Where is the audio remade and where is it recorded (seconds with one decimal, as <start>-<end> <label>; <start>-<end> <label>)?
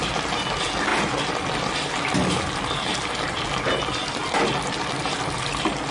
0.0-5.9 recorded